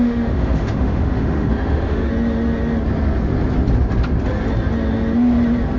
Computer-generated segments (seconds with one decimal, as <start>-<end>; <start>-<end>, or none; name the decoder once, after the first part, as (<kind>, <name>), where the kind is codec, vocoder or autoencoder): 0.0-2.1 (autoencoder, DAC-VAE)